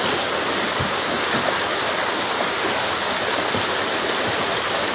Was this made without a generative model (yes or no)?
yes